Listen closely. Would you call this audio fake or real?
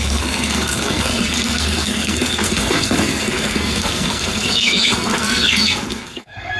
fake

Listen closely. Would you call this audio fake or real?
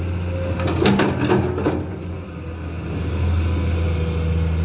real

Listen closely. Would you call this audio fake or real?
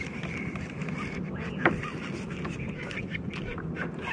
real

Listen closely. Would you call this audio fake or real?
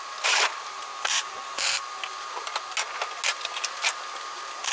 real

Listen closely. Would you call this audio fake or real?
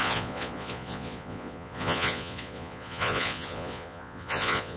fake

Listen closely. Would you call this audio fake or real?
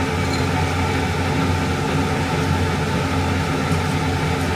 real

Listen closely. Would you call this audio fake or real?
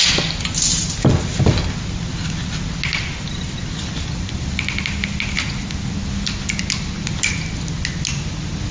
real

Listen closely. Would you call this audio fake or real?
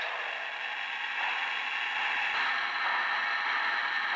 real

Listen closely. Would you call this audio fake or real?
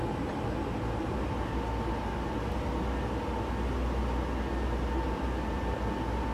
real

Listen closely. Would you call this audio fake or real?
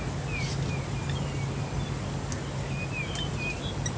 real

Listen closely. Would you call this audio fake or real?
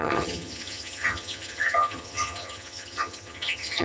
fake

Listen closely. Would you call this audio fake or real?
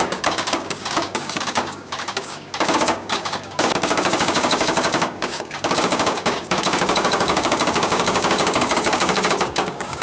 fake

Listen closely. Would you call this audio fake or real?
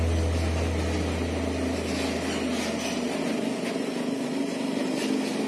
real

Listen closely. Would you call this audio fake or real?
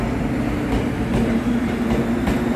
real